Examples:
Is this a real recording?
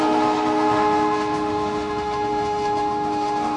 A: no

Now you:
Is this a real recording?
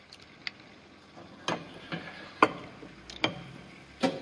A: yes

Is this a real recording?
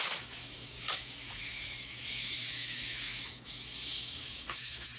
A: no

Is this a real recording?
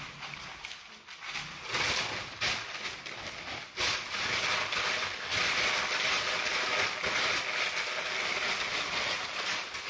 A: yes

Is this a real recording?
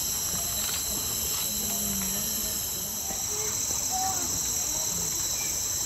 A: yes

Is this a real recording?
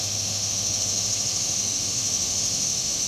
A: no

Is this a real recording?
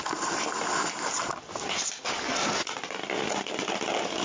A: yes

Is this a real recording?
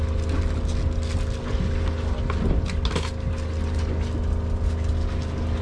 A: yes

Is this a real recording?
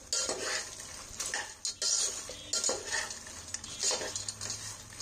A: yes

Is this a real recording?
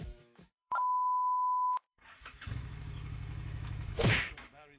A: no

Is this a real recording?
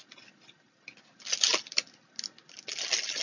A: yes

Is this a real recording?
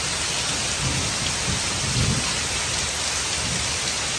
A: yes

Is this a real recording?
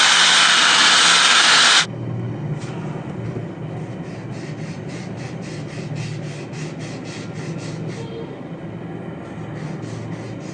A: yes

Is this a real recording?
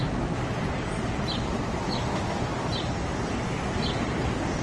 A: yes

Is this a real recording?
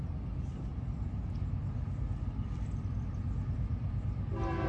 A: yes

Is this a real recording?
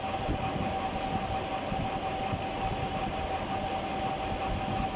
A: yes